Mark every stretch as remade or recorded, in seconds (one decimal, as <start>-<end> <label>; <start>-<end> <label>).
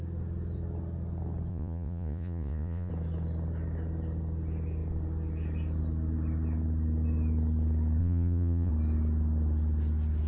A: 0.0-1.5 recorded; 1.5-2.9 remade; 2.9-8.0 recorded; 8.0-8.7 remade; 8.7-10.3 recorded